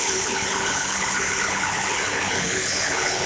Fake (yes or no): yes